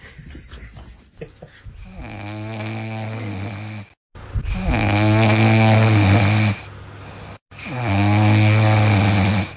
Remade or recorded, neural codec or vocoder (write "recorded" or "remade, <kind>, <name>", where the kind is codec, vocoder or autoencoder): recorded